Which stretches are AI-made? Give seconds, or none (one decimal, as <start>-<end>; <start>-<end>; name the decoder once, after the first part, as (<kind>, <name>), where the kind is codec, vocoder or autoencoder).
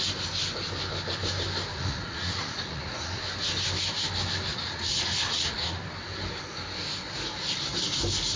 1.7-3.2 (vocoder, Vocos); 4.5-5.8